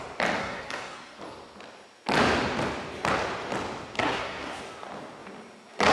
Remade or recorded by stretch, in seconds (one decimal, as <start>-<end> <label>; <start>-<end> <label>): 0.0-0.4 recorded; 0.4-1.2 remade; 1.2-4.0 recorded; 4.0-4.6 remade; 4.6-5.9 recorded